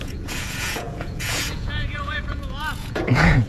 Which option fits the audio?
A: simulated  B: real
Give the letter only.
A